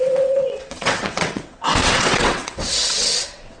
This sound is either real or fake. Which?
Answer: fake